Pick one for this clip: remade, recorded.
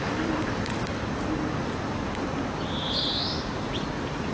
remade